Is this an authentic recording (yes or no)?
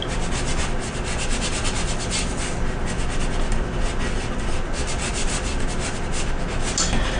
yes